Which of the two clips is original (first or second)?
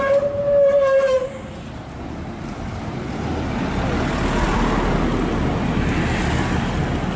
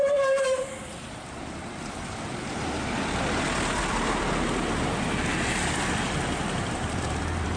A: first